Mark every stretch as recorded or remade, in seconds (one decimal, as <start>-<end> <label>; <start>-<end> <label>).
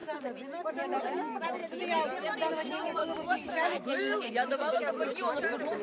0.0-3.0 recorded; 3.0-4.8 remade; 4.8-5.8 recorded